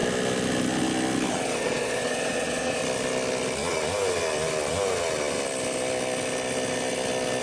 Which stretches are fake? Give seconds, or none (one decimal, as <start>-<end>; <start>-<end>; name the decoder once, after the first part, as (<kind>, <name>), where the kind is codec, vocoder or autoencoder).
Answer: 1.3-2.8 (vocoder, Vocos)